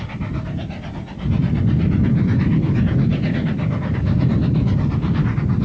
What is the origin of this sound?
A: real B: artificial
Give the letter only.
A